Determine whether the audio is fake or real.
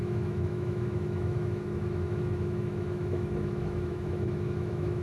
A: fake